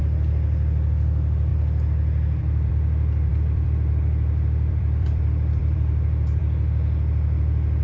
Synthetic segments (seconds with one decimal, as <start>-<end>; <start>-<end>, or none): 3.3-6.4